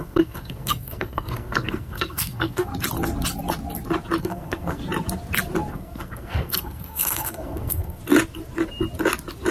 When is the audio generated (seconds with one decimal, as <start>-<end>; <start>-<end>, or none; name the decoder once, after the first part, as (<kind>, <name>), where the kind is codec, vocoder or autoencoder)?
0.0-2.7 (codec, SNAC); 4.2-4.8; 5.7-8.0